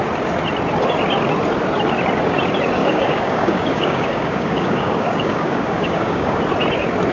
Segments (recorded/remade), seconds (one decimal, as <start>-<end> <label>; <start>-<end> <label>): 0.0-2.8 recorded; 2.8-6.4 remade; 6.4-7.1 recorded